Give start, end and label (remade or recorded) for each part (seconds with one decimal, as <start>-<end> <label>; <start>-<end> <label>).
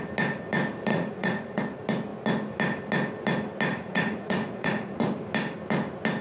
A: 0.0-0.9 recorded; 0.9-1.6 remade; 1.6-3.7 recorded; 3.7-5.1 remade; 5.1-6.2 recorded